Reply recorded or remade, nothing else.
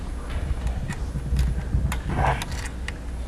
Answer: recorded